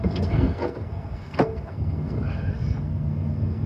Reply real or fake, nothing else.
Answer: fake